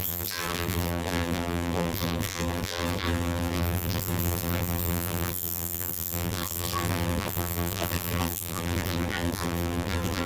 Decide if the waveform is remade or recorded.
remade